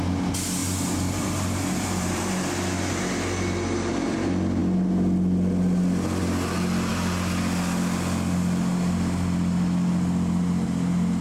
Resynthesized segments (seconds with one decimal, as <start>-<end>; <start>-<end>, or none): 0.6-2.3